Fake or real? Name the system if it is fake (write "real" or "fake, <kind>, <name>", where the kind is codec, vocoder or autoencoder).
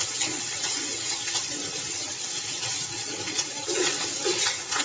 fake, vocoder, WaveNeXt